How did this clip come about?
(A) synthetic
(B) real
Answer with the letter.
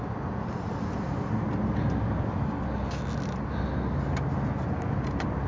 B